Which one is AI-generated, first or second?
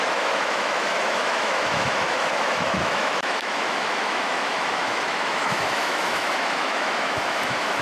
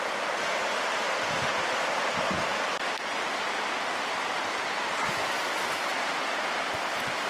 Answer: first